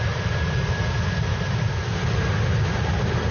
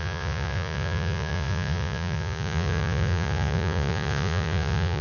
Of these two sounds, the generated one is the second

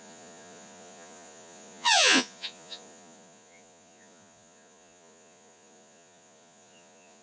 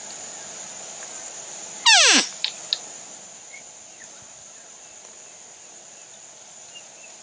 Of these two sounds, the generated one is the first